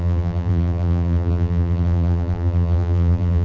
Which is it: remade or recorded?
remade